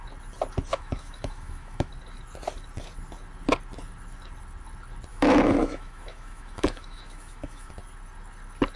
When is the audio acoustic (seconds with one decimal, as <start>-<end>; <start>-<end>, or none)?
0.0-0.7; 1.9-5.1; 7.7-8.8